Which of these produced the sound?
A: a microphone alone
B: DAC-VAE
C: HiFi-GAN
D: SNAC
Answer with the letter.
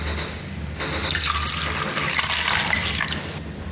A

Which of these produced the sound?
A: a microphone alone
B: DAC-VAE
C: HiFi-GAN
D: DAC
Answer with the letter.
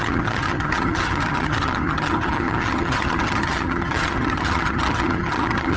C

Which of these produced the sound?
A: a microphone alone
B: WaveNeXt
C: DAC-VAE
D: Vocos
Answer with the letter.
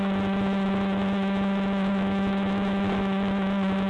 C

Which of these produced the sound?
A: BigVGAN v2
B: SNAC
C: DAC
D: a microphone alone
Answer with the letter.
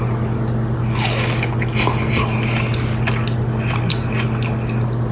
D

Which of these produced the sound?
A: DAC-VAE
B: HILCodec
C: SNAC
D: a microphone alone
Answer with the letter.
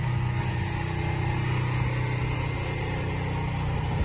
D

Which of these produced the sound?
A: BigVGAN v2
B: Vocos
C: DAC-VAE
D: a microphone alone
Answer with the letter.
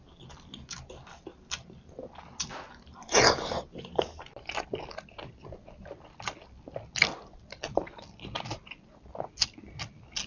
D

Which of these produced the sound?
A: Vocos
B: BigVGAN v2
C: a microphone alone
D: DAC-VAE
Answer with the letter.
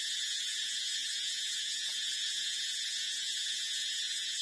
A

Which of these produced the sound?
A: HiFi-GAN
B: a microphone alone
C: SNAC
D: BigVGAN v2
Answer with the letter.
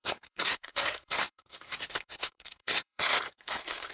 C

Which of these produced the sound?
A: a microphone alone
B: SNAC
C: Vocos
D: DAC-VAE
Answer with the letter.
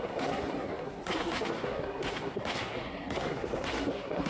B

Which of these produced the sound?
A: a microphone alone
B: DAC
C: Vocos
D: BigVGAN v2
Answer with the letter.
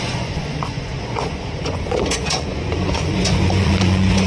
C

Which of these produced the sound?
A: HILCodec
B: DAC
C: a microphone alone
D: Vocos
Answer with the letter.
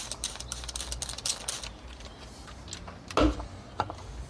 C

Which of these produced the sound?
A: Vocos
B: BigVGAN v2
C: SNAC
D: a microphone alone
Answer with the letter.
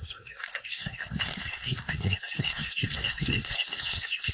C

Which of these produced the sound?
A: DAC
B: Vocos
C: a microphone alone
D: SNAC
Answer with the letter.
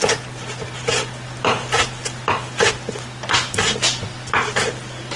C